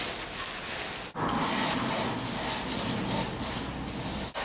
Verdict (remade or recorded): recorded